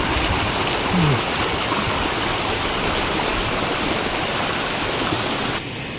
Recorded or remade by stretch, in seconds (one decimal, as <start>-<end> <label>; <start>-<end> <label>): 0.0-6.0 recorded